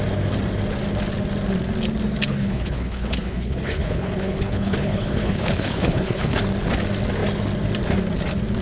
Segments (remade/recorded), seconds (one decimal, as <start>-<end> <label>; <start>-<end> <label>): 0.0-2.3 recorded; 2.3-6.4 remade; 6.4-8.6 recorded